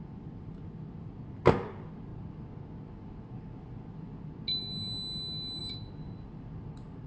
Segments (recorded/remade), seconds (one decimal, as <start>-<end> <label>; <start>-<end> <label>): 0.0-7.1 recorded